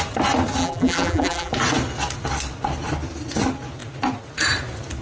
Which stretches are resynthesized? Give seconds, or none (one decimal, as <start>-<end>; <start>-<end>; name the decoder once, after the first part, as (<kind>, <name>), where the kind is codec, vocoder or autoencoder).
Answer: 0.6-1.5 (vocoder, BigVGAN v2)